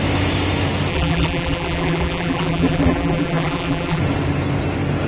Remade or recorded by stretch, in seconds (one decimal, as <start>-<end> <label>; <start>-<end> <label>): 0.0-0.9 recorded; 0.9-4.0 remade; 4.0-5.1 recorded